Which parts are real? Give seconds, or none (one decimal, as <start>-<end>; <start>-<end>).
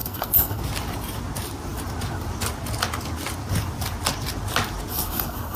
0.6-4.9